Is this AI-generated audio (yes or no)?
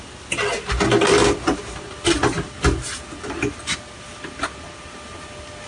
no